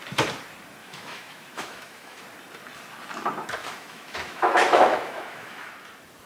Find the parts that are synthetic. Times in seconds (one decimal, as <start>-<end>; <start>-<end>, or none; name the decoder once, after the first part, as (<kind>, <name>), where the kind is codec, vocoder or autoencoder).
0.8-2.2 (autoencoder, DAC-VAE); 3.6-5.7